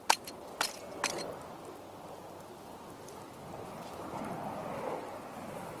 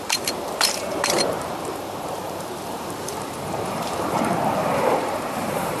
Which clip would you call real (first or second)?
first